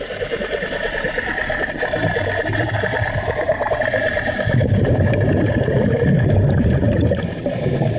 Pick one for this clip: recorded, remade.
remade